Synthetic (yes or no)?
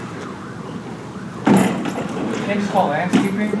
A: no